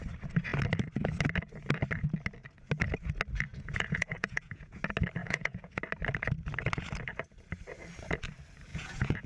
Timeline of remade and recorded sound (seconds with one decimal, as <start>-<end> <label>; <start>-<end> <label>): 0.0-3.5 recorded; 3.5-4.8 remade; 4.8-5.2 recorded; 5.2-5.8 remade; 5.8-8.7 recorded; 8.7-9.3 remade